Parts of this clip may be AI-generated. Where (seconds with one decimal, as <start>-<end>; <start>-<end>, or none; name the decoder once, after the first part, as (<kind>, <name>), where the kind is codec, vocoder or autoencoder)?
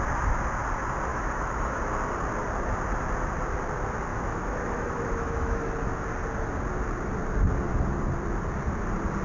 1.1-1.8 (autoencoder, DAC-VAE); 4.1-5.7